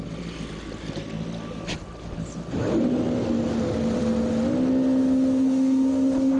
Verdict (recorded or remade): recorded